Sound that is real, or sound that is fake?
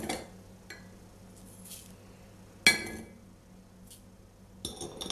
real